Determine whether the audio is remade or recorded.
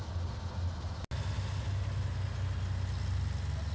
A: recorded